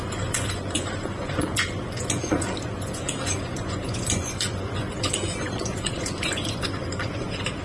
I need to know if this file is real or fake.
fake